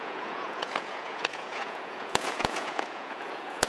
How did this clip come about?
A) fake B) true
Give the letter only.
A